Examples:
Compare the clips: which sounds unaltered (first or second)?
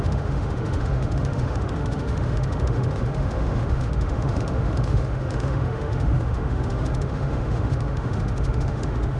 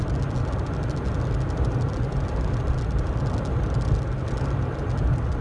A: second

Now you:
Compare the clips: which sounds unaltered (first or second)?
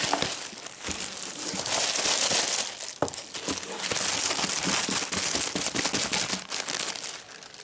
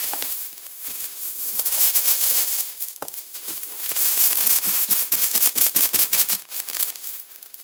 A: first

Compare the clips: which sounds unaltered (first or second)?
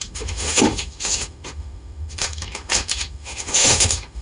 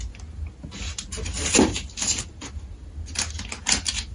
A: second